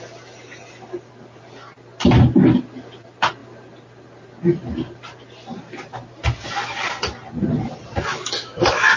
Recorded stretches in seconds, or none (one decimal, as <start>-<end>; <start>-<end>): 0.0-8.1